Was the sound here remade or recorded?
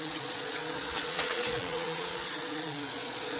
remade